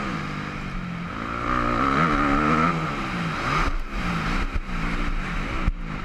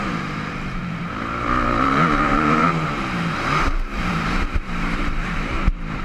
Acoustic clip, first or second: first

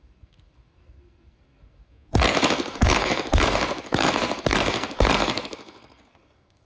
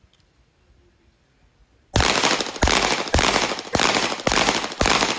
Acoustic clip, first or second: second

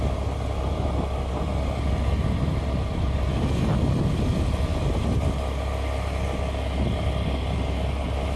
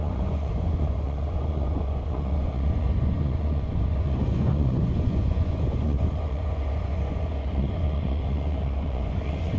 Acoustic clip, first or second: first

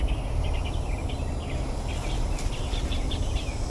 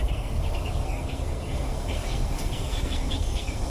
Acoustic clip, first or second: first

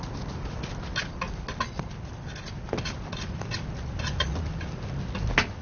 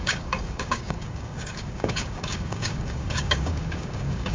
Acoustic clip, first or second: first